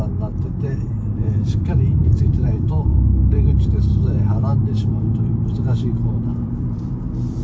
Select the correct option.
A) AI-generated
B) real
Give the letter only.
A